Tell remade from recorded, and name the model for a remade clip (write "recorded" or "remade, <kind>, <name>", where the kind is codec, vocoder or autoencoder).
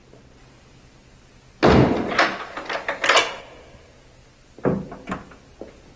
recorded